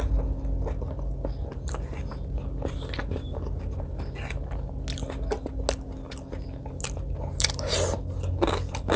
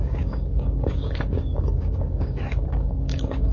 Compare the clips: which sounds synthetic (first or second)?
second